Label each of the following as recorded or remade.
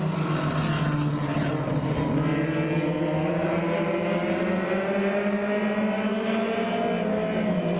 recorded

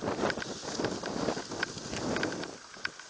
recorded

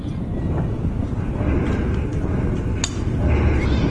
recorded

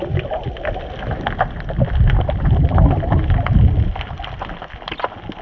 recorded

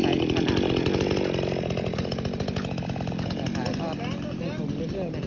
recorded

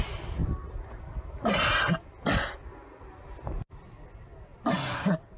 recorded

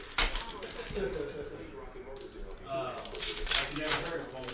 recorded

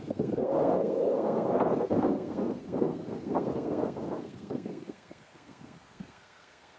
remade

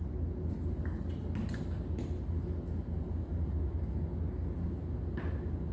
recorded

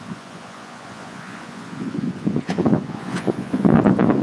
remade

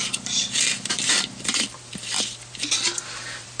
remade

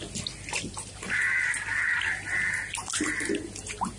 recorded